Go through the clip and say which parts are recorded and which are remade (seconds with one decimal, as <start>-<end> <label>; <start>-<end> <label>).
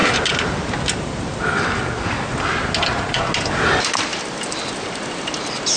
0.0-5.8 recorded